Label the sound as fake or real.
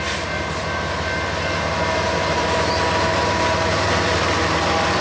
real